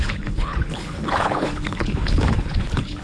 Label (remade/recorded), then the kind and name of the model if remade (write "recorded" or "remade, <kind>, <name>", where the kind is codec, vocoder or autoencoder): remade, codec, HILCodec